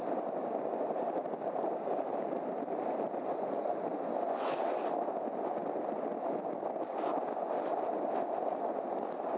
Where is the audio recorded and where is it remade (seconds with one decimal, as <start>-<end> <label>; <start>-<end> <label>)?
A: 0.0-9.4 recorded